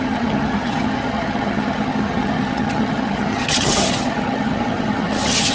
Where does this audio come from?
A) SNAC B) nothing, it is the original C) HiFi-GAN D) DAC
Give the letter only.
C